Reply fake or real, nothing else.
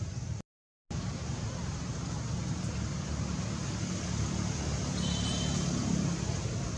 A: real